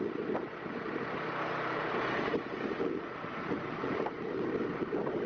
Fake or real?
real